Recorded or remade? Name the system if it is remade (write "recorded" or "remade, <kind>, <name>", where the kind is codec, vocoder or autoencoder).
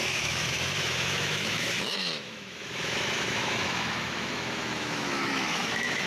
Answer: remade, autoencoder, DAC-VAE